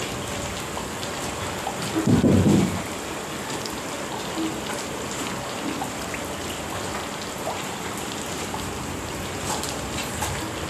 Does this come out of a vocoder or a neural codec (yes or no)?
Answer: no